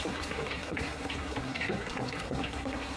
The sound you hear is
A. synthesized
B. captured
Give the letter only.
A